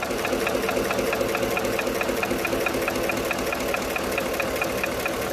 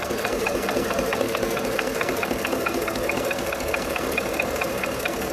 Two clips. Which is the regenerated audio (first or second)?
second